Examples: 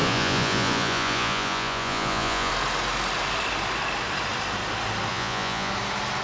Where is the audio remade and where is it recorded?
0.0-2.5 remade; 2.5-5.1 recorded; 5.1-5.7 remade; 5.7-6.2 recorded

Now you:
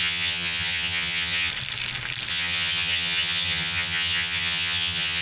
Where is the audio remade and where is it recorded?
0.0-1.5 remade; 1.5-2.3 recorded; 2.3-5.2 remade

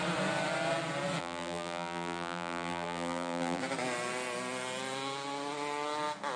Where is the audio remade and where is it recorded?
0.0-1.2 recorded; 1.2-3.6 remade; 3.6-6.4 recorded

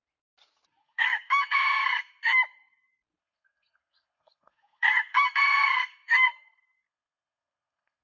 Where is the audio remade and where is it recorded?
0.0-0.8 recorded; 0.8-2.2 remade; 2.2-3.2 recorded; 3.2-8.0 remade

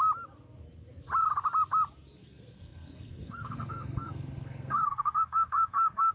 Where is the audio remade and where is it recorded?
0.0-2.2 recorded; 2.2-6.1 remade

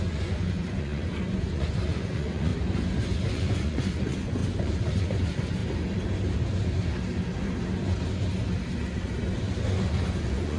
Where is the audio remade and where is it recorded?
0.0-2.5 remade; 2.5-3.3 recorded; 3.3-5.6 remade; 5.6-10.2 recorded; 10.2-10.6 remade

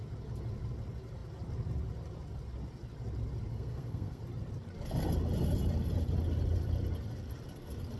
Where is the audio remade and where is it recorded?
0.0-3.5 recorded; 3.5-4.2 remade; 4.2-8.0 recorded